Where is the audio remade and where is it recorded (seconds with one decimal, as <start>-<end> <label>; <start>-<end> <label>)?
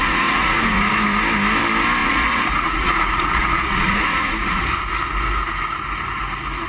0.0-0.9 remade; 0.9-2.0 recorded; 2.0-4.6 remade; 4.6-6.7 recorded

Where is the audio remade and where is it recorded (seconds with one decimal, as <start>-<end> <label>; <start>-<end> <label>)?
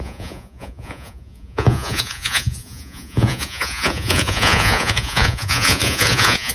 0.0-6.5 remade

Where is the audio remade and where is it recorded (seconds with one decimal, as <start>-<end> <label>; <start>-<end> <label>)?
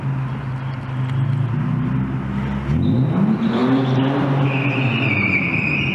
0.0-5.9 recorded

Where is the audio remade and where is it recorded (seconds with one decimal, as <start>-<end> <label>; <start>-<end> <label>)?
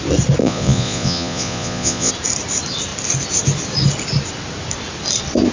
0.0-0.4 recorded; 0.4-2.1 remade; 2.1-5.5 recorded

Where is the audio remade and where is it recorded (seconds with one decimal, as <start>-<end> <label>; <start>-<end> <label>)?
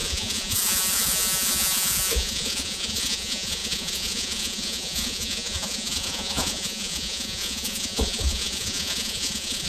0.0-9.7 remade